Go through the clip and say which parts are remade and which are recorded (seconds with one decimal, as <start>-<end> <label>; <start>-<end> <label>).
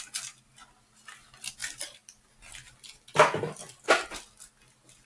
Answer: 0.0-5.1 recorded